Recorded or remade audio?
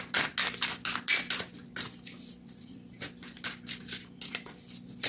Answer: recorded